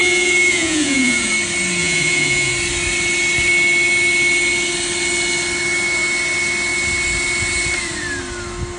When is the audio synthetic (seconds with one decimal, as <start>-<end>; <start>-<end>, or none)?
0.0-1.3; 1.8-2.5